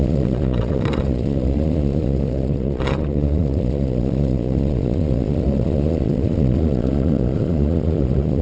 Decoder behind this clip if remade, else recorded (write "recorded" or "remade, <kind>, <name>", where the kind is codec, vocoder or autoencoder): remade, vocoder, Vocos